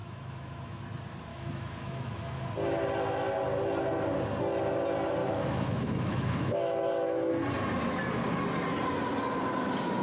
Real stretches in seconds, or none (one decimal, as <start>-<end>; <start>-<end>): 0.8-1.3; 2.5-5.2; 7.3-10.0